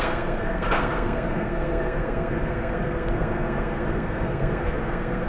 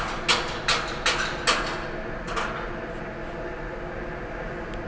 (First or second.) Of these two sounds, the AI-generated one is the first